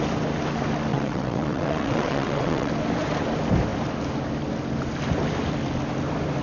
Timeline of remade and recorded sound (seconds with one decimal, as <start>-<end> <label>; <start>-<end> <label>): 0.0-0.9 recorded; 0.9-2.7 remade; 2.7-6.4 recorded